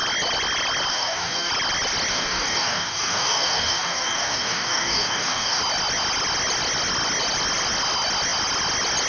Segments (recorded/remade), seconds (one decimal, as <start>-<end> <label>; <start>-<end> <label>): 0.0-0.9 recorded; 0.9-1.5 remade; 1.5-2.1 recorded; 2.1-5.6 remade; 5.6-9.1 recorded